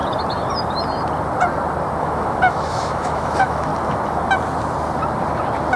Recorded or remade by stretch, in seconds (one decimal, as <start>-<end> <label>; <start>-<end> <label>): 0.0-2.0 recorded; 2.0-3.7 remade; 3.7-5.8 recorded